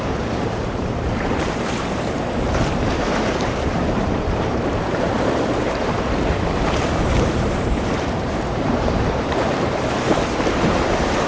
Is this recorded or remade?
remade